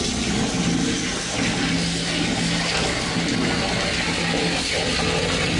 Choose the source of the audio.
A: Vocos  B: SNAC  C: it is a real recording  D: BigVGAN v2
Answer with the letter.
C